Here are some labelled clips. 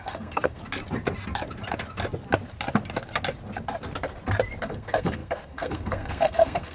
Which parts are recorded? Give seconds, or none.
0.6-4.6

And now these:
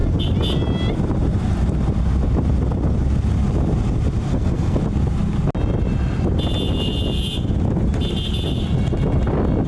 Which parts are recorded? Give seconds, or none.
0.0-4.3; 4.8-9.7

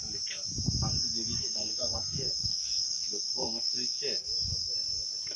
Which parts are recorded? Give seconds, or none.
0.0-1.4; 4.0-5.4